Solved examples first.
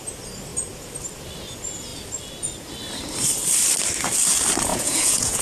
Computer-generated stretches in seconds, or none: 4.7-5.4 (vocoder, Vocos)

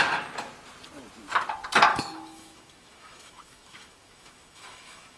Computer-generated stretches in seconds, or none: 1.9-5.2 (autoencoder, DAC-VAE)

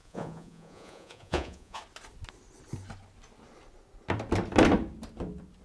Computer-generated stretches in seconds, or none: 0.0-1.8 (vocoder, Vocos)

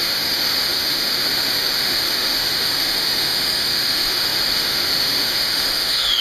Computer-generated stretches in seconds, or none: 0.0-6.2 (autoencoder, DAC-VAE)

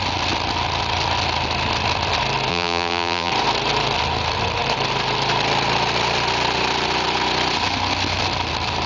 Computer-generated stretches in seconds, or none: 2.5-3.3 (vocoder, BigVGAN v2)

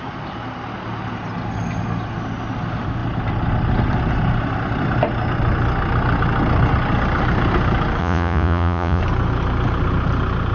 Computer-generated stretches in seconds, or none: 8.0-9.0 (vocoder, Vocos)

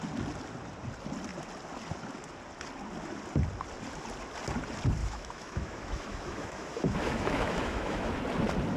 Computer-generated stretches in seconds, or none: 5.0-8.1 (autoencoder, DAC-VAE)